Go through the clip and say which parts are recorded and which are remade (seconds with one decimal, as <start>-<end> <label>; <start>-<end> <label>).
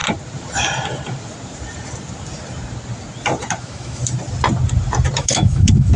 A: 0.0-3.6 recorded; 3.6-4.0 remade; 4.0-5.2 recorded; 5.2-6.0 remade